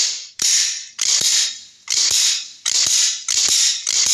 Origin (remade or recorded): recorded